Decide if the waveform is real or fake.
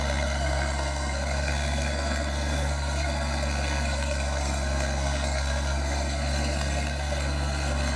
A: fake